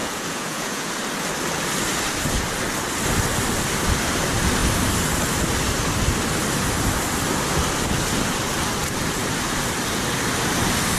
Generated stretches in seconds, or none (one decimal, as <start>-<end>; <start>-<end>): 0.0-0.9